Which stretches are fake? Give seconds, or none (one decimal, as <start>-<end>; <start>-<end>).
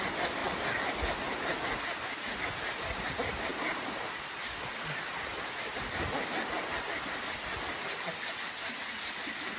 3.5-4.7; 5.3-7.2